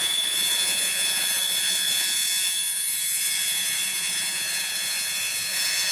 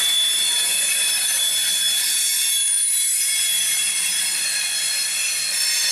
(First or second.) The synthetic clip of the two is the first